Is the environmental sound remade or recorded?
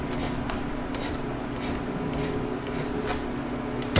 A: recorded